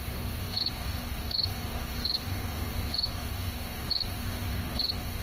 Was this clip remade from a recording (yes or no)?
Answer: yes